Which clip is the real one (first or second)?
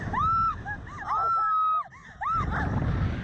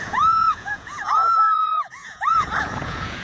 first